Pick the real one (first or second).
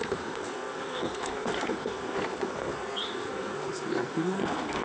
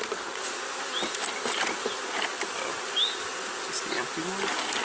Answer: second